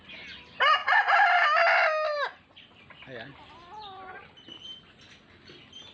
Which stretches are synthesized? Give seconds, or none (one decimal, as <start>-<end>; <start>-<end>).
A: none